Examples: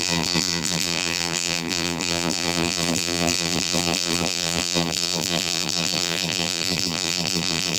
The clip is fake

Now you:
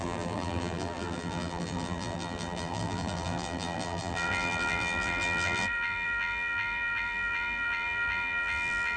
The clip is fake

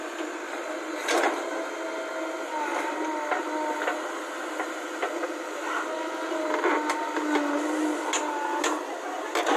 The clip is real